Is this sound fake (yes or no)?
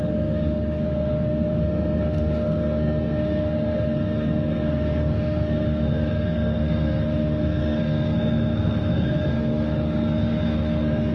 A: yes